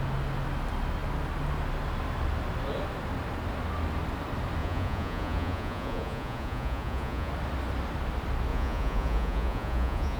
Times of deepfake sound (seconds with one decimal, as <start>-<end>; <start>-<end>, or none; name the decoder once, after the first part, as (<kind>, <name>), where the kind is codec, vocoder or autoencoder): 4.6-7.3 (vocoder, Vocos); 8.5-10.2